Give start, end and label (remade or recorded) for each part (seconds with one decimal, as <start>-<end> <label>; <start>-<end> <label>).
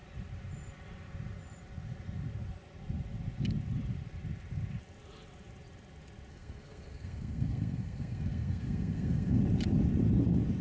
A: 0.0-6.3 recorded; 6.3-9.4 remade; 9.4-10.6 recorded